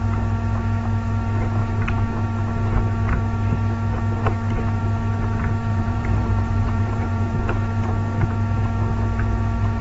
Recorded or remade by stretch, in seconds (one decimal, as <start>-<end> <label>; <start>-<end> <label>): 0.0-5.7 recorded; 5.7-7.4 remade; 7.4-9.8 recorded